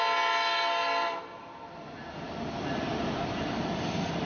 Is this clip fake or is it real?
real